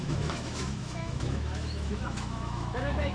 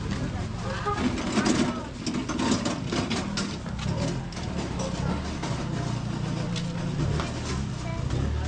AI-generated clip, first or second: first